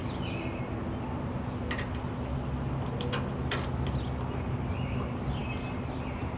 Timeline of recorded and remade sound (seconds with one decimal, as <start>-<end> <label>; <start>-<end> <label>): 0.0-6.4 recorded